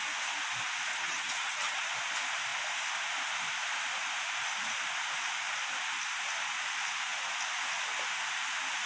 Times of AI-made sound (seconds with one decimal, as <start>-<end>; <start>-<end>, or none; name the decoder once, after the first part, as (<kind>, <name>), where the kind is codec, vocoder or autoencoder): 0.9-1.8 (vocoder, HiFi-GAN)